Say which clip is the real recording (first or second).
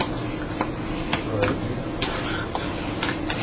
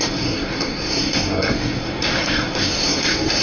first